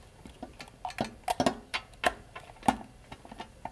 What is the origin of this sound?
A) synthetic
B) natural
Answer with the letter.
B